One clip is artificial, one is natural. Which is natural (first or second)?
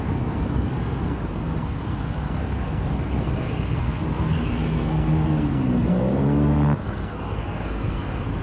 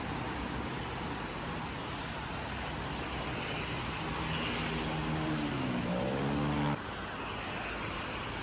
second